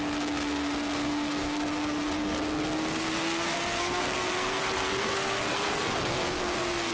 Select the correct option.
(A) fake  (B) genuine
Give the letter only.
A